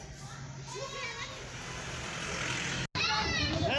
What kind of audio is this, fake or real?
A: real